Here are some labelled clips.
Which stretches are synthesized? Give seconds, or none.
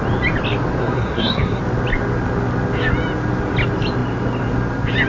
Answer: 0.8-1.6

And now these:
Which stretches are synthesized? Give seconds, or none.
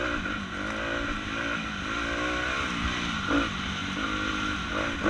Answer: none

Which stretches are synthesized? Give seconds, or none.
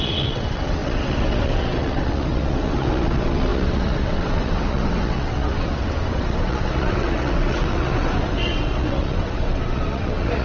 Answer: 0.0-10.4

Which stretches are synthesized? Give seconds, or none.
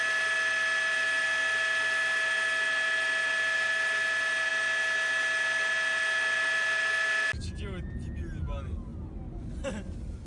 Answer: none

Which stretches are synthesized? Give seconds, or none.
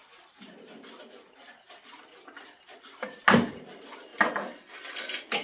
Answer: 0.0-3.2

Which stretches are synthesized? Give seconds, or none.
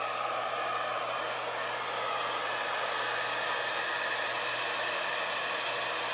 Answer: none